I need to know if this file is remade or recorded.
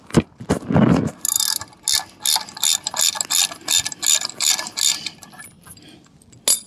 recorded